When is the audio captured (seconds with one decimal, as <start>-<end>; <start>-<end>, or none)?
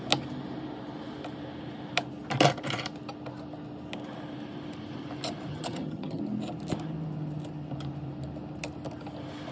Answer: 0.0-5.5; 6.2-9.5